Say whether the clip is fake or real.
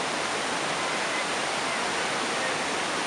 real